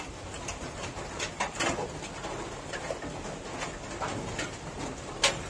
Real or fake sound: real